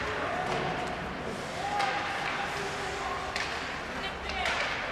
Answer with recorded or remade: recorded